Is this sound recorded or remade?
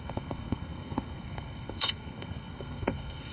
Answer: remade